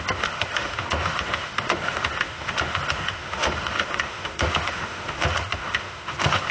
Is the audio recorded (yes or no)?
no